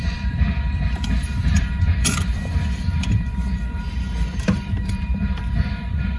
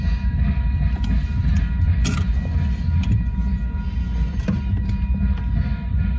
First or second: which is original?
second